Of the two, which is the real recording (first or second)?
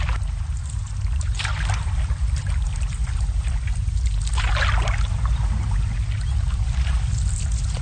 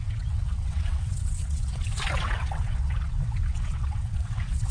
first